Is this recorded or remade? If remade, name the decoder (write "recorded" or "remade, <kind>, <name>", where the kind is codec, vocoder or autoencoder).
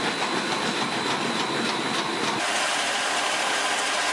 recorded